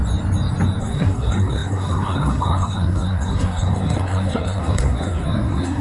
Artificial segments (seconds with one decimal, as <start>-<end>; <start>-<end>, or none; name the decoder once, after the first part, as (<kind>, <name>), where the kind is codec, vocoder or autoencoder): 0.8-5.8 (codec, SNAC)